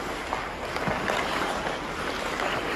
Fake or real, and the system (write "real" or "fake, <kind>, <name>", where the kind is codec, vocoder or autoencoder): real